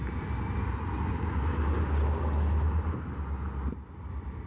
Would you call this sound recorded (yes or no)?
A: yes